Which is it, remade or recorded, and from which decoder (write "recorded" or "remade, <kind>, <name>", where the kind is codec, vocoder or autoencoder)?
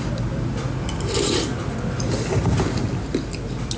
recorded